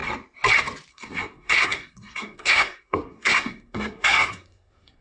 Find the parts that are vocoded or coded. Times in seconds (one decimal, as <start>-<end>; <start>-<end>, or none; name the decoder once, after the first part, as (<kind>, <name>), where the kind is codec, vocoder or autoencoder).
0.9-5.0 (codec, SNAC)